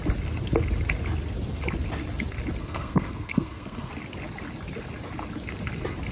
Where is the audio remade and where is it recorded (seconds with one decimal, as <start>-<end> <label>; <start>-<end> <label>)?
0.0-2.6 recorded; 2.6-3.9 remade; 3.9-6.1 recorded